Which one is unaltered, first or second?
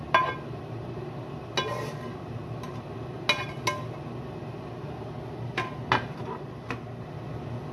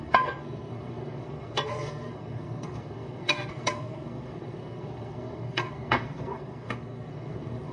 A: first